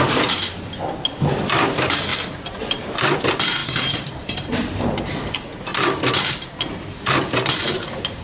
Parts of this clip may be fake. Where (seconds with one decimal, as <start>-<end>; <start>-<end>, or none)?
2.1-3.2; 3.6-5.3; 5.7-8.2